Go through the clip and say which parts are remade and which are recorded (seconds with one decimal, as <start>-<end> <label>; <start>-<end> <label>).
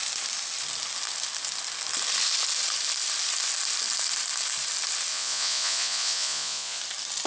0.0-5.1 recorded; 5.1-6.8 remade; 6.8-7.3 recorded